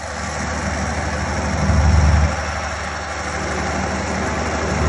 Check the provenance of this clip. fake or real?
real